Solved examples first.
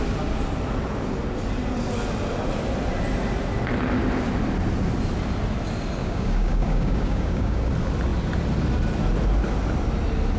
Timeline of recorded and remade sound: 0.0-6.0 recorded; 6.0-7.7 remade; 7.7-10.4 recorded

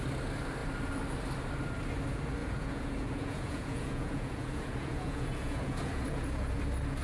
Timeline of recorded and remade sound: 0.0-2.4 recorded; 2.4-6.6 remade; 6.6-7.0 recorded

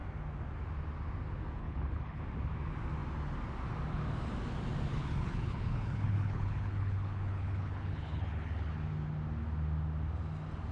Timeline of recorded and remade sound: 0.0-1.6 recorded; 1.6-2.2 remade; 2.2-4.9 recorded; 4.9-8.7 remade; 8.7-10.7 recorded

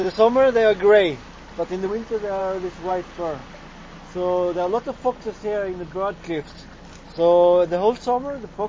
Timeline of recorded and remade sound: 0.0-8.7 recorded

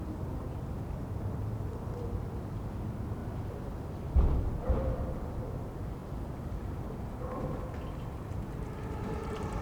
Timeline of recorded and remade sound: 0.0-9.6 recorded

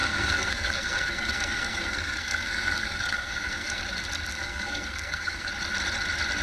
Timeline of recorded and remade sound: 0.0-3.8 remade; 3.8-4.3 recorded; 4.3-5.5 remade; 5.5-6.4 recorded

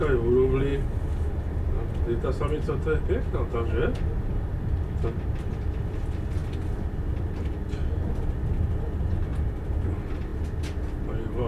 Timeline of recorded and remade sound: 0.0-11.5 recorded